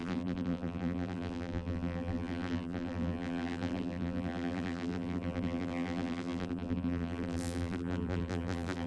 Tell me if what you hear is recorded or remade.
remade